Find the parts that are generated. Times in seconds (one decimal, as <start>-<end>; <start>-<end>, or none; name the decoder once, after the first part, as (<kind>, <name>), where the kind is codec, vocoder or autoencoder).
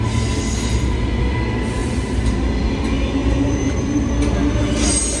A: 1.8-2.3 (vocoder, BigVGAN v2); 3.2-4.1